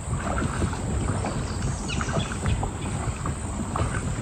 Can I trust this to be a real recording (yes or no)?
yes